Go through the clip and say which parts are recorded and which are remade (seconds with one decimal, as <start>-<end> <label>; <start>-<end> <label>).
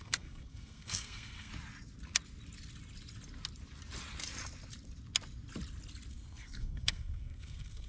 0.0-1.5 remade; 1.5-6.1 recorded; 6.1-7.9 remade